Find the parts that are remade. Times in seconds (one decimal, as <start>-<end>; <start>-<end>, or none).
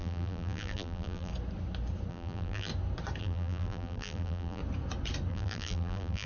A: 0.0-1.3; 2.1-2.7; 3.2-4.6; 5.3-6.3